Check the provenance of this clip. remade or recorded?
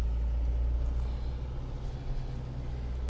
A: recorded